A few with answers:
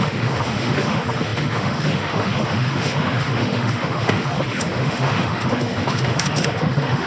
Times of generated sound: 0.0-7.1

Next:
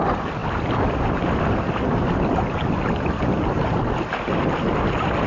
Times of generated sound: none